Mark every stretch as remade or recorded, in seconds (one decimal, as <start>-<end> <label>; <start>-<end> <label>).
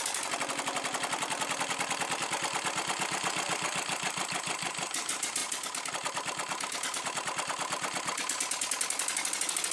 0.0-9.7 recorded